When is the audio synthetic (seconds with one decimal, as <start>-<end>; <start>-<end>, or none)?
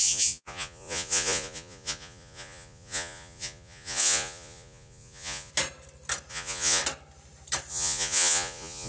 0.0-5.5; 6.3-6.8; 7.7-8.9